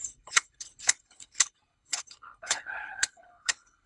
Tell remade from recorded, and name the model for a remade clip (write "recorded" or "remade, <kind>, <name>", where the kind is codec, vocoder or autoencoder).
remade, codec, HILCodec